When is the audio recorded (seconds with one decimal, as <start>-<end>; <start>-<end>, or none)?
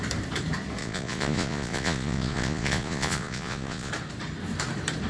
0.0-0.8; 3.9-5.1